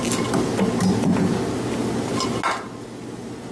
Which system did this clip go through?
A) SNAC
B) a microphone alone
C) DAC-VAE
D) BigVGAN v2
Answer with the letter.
B